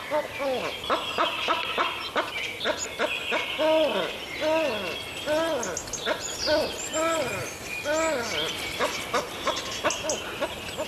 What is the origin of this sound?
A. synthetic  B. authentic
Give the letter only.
B